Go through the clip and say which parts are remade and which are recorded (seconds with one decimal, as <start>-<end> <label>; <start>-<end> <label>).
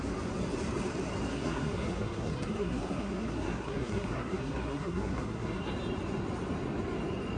0.0-1.3 recorded; 1.3-5.7 remade; 5.7-7.4 recorded